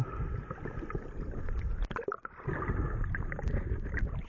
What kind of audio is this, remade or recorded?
recorded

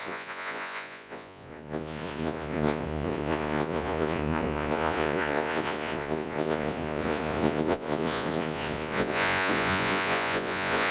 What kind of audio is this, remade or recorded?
remade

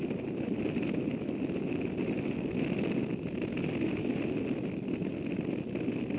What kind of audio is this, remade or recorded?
recorded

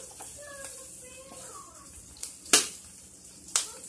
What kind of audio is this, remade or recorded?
recorded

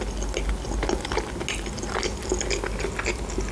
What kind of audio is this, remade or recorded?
recorded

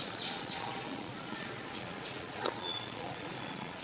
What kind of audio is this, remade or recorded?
remade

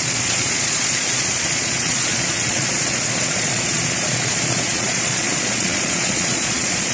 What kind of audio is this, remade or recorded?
remade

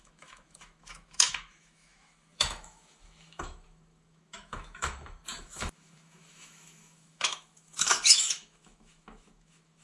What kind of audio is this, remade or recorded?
remade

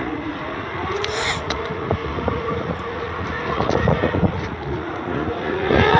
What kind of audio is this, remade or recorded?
remade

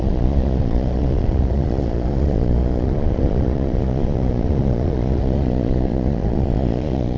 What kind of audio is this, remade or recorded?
remade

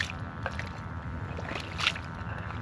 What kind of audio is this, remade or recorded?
recorded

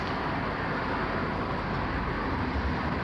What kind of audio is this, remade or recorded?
recorded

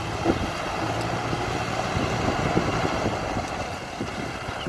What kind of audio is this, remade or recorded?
recorded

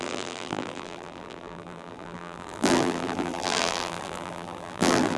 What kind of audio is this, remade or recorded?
remade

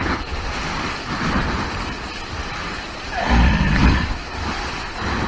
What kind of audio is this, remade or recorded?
remade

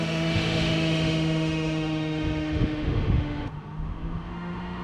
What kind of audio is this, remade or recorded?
remade